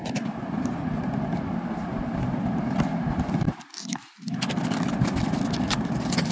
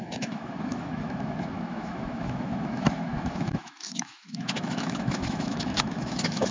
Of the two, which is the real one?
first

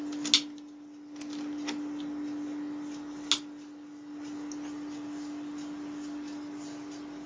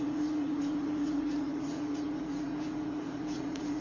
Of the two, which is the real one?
first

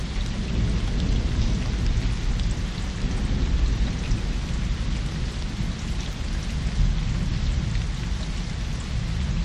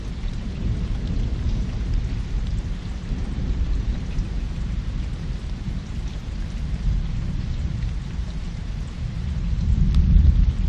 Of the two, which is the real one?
first